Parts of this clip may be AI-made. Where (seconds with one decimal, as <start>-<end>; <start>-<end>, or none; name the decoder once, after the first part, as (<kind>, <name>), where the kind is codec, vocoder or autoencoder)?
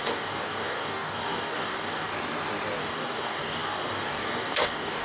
0.0-2.1 (codec, DAC); 2.8-5.0